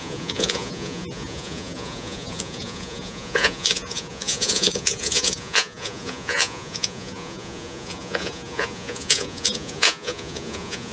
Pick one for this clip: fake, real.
fake